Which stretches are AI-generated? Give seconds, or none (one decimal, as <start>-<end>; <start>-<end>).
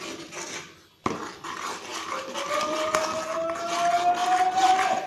1.9-3.0; 4.2-5.1